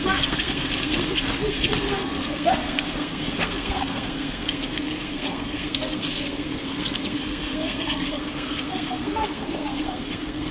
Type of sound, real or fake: fake